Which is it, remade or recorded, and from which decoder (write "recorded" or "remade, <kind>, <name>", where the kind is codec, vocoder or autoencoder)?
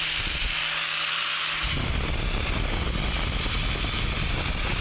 recorded